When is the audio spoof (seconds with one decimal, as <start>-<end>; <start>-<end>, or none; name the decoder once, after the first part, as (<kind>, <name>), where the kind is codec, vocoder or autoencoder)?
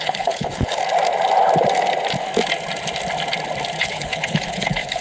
0.0-0.8 (codec, HILCodec); 3.8-5.0